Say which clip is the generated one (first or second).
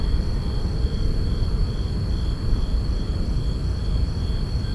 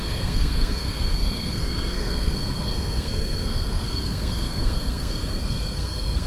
second